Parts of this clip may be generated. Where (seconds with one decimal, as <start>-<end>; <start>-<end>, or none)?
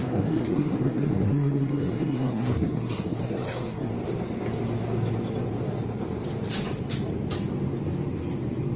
0.0-3.9